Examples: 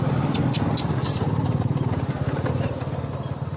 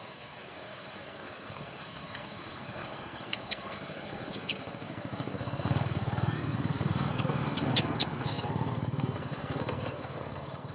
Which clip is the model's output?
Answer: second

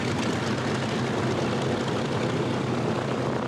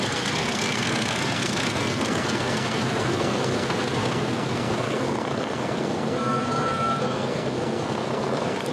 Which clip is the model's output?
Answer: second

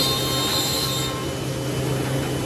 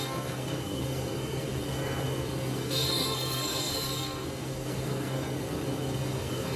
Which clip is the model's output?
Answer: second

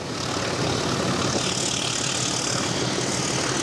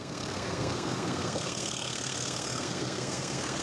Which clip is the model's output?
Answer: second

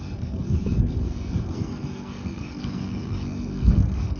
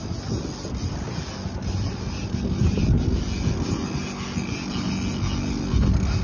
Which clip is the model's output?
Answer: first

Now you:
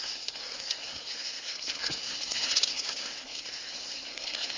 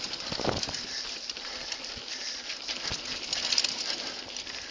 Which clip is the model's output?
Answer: first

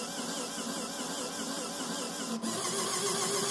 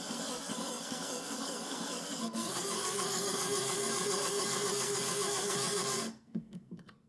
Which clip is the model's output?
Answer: second